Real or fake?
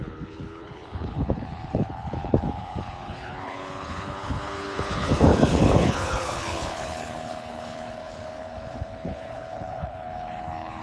fake